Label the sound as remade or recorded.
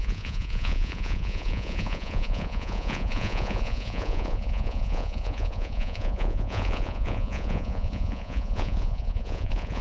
remade